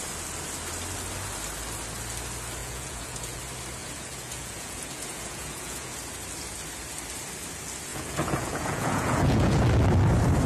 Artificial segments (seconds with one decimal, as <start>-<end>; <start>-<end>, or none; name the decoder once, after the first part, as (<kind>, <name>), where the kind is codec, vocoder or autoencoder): 2.6-3.4 (vocoder, Vocos); 3.8-5.9; 7.9-9.6